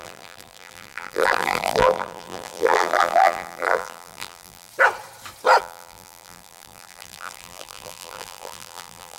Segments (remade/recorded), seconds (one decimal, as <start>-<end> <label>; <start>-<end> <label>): 0.0-4.7 remade; 4.7-5.6 recorded; 5.6-9.2 remade